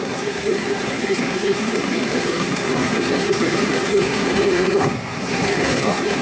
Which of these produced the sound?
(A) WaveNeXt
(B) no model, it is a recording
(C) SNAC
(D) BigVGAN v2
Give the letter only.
C